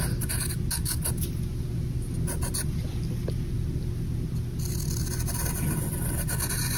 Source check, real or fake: real